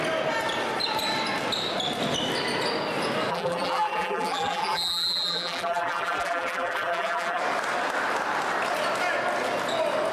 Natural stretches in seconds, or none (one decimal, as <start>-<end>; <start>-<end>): 0.0-3.3; 7.4-10.1